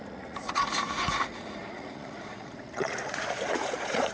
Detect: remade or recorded remade